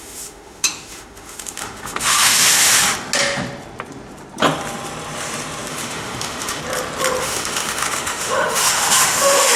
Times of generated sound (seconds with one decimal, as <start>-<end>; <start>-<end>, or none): 0.0-2.8; 5.7-6.6; 7.2-9.6